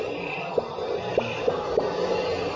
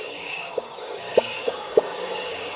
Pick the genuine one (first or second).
first